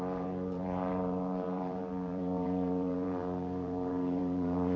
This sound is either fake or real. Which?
fake